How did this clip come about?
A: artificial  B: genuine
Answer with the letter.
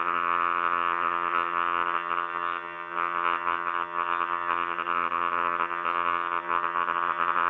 A